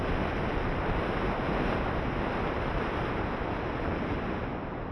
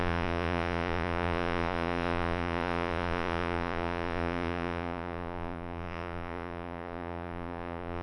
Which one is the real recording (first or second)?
first